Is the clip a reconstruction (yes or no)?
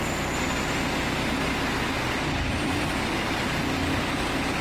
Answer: no